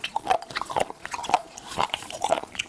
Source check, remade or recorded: remade